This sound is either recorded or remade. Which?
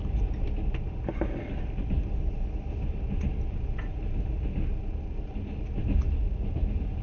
recorded